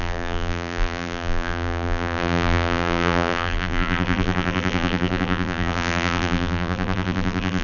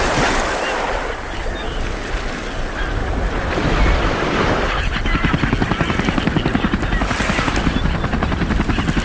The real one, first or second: second